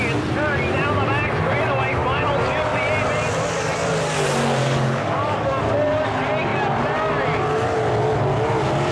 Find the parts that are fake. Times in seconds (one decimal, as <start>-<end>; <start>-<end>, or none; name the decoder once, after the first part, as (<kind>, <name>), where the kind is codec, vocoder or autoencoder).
4.6-5.7 (codec, DAC)